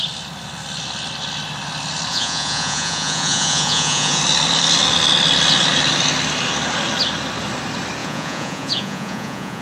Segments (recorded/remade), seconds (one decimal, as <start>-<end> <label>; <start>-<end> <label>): 0.0-2.1 recorded; 2.1-4.2 remade; 4.2-8.0 recorded; 8.0-9.6 remade